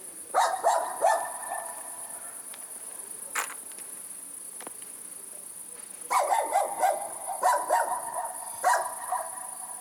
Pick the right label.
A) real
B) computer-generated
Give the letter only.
A